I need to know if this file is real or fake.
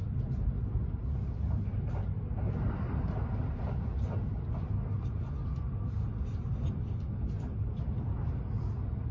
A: real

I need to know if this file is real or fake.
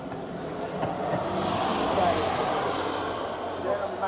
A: real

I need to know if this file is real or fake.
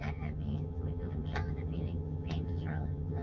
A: fake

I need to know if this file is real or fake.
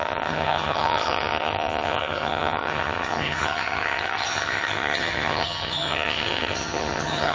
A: fake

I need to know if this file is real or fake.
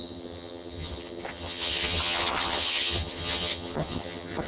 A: fake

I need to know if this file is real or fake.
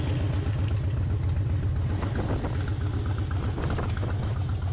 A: real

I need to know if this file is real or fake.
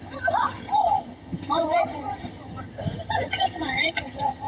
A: fake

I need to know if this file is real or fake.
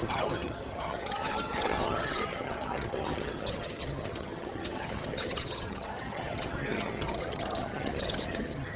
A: fake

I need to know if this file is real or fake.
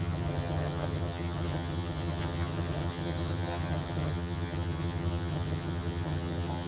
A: fake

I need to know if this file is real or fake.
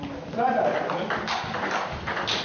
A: real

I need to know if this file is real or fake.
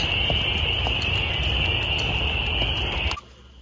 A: real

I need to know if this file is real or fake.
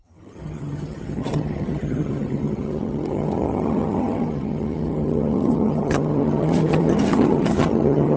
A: fake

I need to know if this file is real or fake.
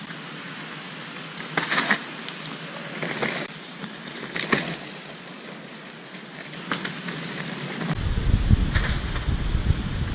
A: real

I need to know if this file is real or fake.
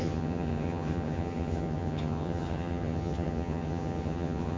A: fake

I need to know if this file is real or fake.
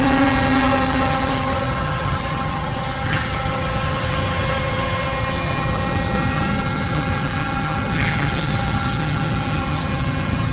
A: fake